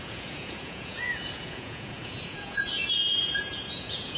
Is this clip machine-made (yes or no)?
yes